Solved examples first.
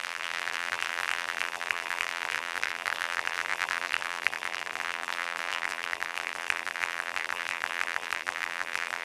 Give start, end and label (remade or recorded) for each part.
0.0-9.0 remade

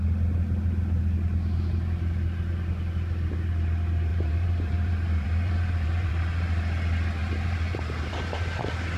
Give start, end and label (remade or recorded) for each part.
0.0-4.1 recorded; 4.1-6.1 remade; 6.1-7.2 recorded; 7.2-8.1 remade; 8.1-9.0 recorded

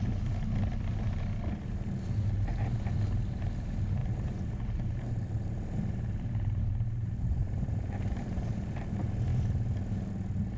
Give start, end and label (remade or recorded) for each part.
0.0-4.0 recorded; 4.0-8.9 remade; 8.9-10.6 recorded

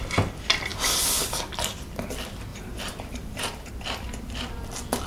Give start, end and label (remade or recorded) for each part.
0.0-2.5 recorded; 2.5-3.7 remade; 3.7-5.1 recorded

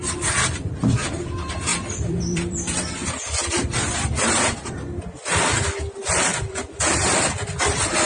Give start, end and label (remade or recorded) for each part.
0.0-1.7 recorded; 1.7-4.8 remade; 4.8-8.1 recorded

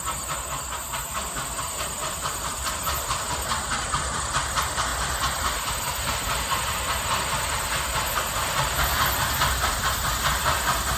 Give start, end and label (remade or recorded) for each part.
0.0-2.0 recorded; 2.0-3.4 remade; 3.4-11.0 recorded